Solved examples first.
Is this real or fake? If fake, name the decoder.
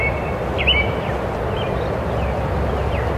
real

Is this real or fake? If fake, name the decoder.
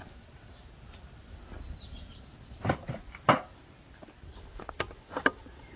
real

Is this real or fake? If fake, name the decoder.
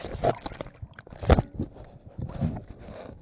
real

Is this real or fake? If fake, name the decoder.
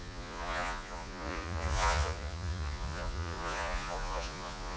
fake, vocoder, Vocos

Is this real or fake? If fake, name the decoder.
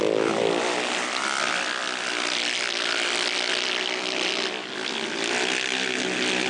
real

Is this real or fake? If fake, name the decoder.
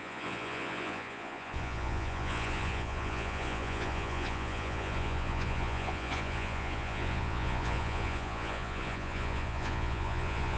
fake, vocoder, Vocos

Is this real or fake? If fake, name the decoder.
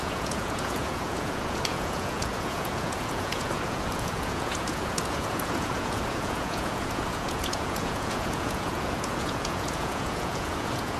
fake, vocoder, Vocos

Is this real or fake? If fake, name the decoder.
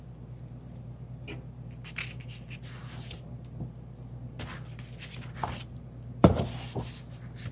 real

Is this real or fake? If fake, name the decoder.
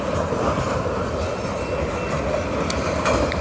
real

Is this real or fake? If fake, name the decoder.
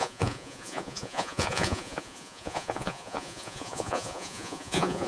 fake, vocoder, Vocos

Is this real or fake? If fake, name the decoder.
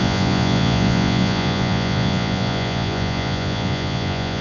fake, vocoder, Vocos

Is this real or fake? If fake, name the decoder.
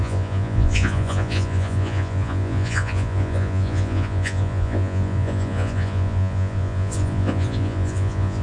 fake, vocoder, Vocos